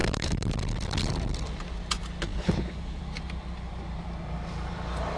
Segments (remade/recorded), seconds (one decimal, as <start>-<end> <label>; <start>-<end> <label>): 0.0-0.5 remade; 0.5-2.3 recorded; 2.3-3.0 remade; 3.0-5.2 recorded